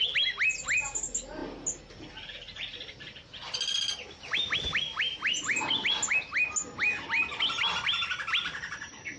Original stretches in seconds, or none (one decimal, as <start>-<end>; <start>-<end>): 0.0-9.2